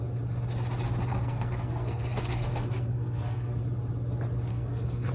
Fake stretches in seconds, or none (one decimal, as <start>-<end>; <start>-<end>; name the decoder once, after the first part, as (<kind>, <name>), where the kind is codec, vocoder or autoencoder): 1.1-3.6 (codec, SNAC); 4.5-5.1